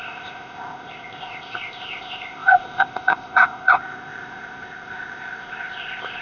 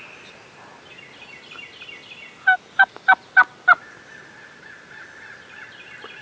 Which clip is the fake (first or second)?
first